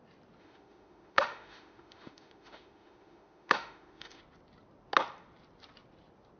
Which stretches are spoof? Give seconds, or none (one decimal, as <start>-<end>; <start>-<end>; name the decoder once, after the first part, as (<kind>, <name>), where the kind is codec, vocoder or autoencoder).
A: 0.4-4.2 (autoencoder, DAC-VAE)